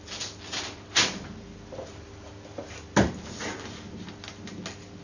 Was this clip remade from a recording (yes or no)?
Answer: no